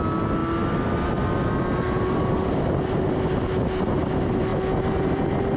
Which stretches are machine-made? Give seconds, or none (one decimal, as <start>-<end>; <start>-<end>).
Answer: none